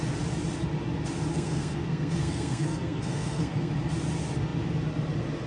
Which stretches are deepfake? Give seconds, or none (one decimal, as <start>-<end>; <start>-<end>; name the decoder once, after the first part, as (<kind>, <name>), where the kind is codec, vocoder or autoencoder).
1.3-3.7 (codec, SNAC)